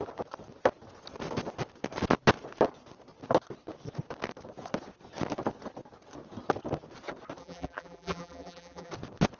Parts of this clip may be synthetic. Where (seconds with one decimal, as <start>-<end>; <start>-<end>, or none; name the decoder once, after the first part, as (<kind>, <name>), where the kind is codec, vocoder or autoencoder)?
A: 7.4-8.9 (vocoder, BigVGAN v2)